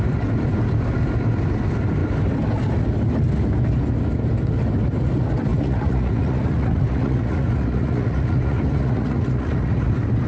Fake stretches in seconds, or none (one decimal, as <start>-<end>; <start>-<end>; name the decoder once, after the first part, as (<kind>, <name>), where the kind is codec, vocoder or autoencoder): 5.5-9.9 (vocoder, Vocos)